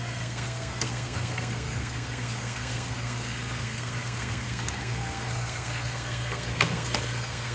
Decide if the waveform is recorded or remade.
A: remade